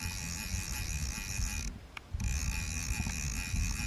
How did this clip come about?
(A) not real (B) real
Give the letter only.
B